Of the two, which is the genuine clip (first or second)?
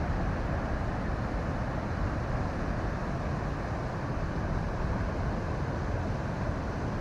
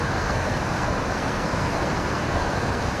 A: first